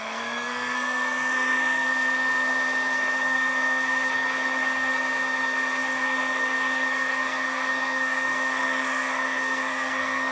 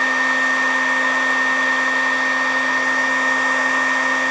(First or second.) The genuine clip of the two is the second